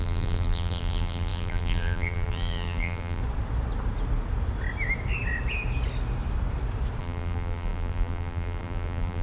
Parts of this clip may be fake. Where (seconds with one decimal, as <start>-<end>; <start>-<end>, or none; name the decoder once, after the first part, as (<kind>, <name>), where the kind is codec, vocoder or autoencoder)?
0.0-3.2 (vocoder, BigVGAN v2); 7.0-9.2